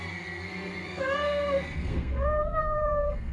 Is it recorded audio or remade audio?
remade